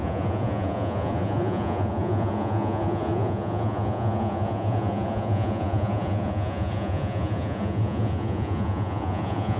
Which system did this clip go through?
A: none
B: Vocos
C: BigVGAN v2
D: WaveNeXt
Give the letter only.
B